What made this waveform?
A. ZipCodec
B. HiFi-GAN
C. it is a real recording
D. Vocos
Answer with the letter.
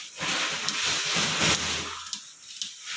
C